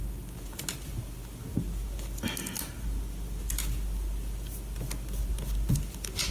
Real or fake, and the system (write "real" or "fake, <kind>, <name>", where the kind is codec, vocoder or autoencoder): real